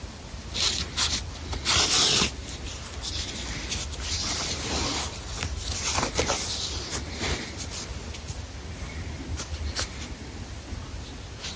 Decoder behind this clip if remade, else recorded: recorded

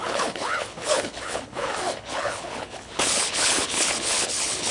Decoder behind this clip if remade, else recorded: remade, codec, HILCodec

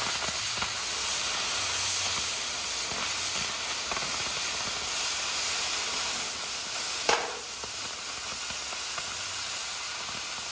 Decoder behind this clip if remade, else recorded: recorded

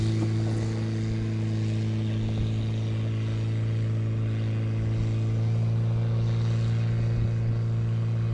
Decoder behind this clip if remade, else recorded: recorded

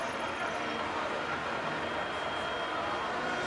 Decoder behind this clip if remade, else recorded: recorded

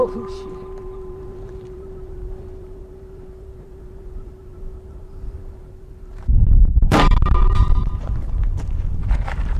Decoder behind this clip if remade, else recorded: remade, vocoder, BigVGAN v2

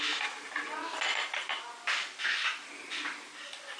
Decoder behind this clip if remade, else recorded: recorded